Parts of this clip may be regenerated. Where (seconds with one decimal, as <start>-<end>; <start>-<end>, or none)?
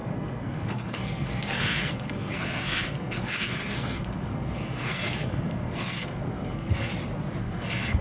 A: 0.0-6.9; 7.4-8.0